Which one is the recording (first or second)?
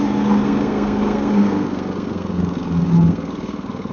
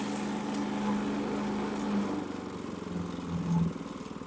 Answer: second